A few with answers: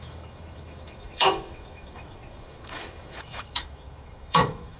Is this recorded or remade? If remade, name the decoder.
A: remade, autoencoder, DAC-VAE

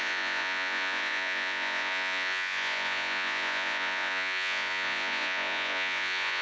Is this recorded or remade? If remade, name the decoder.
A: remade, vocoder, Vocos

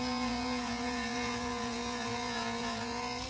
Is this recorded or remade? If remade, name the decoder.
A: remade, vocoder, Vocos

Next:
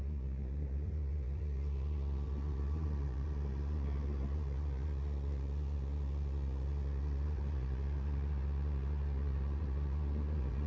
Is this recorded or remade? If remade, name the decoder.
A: remade, vocoder, Vocos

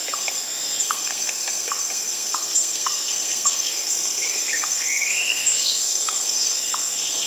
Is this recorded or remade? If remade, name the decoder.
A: remade, codec, SNAC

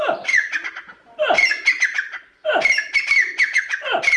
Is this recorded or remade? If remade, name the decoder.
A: recorded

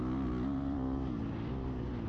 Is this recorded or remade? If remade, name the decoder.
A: recorded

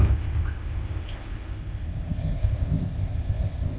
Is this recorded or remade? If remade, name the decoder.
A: remade, codec, ZipCodec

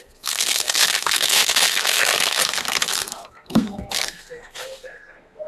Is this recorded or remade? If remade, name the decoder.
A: remade, codec, SNAC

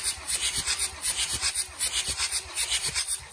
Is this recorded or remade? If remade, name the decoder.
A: remade, vocoder, BigVGAN v2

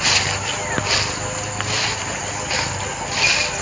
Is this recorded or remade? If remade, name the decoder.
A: recorded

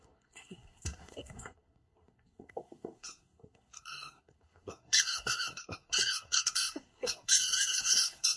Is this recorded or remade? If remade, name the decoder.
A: remade, codec, SNAC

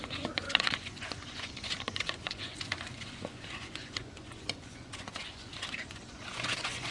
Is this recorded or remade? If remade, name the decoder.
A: remade, vocoder, Vocos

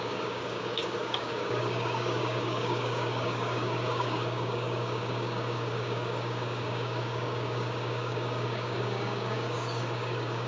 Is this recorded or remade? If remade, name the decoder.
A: remade, codec, DAC